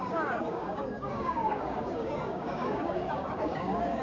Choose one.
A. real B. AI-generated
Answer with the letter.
B